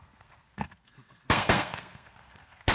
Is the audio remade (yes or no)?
yes